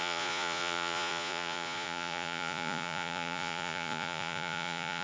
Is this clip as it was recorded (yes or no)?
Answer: no